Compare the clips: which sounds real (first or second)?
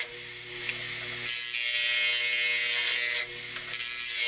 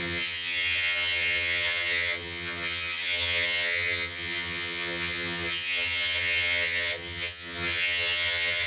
first